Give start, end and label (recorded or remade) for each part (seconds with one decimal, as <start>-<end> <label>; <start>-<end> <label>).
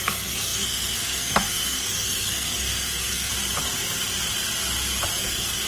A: 0.0-3.3 remade; 3.3-5.2 recorded; 5.2-5.7 remade